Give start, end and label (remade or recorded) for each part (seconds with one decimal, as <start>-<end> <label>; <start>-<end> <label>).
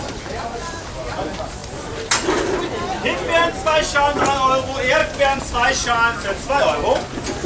0.0-7.5 recorded